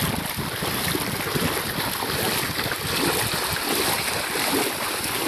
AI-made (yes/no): no